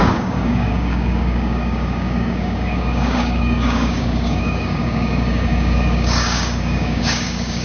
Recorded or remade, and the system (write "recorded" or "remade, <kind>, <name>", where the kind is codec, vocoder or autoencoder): remade, codec, DAC